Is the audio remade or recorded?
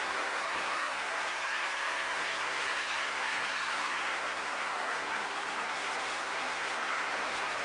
remade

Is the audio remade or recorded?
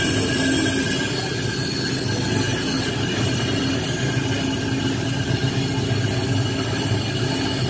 recorded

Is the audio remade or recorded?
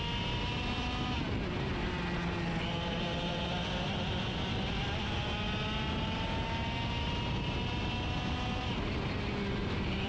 recorded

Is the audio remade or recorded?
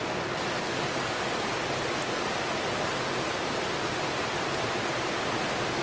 recorded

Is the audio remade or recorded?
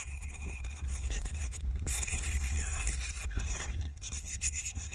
remade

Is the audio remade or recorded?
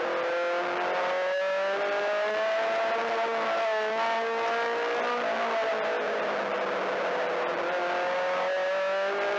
recorded